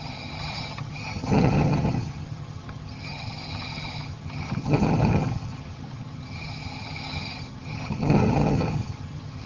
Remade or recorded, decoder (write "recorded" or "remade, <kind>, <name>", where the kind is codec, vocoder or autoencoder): remade, vocoder, HiFi-GAN